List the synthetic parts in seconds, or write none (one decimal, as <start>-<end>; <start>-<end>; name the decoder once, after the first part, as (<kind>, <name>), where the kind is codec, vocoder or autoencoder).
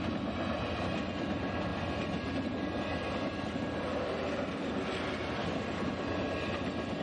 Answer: none